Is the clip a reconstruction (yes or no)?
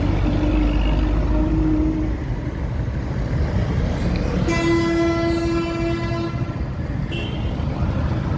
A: no